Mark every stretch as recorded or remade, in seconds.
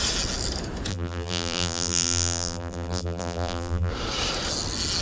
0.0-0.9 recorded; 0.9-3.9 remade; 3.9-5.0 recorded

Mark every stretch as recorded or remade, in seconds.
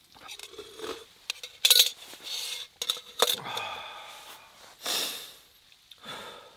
0.0-6.6 recorded